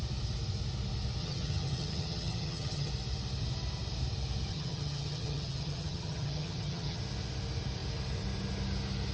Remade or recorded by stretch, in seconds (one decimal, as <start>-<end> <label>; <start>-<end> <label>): 0.0-1.2 recorded; 1.2-2.9 remade; 2.9-4.5 recorded; 4.5-7.0 remade; 7.0-9.1 recorded